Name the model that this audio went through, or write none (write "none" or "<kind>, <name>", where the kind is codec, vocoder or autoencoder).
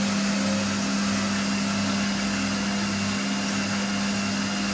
none